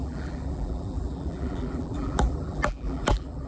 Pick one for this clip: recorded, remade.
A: remade